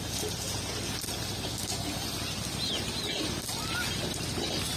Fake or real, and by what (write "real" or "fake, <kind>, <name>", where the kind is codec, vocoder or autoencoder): real